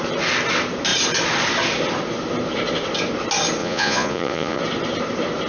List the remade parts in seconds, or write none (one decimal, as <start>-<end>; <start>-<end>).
3.6-4.6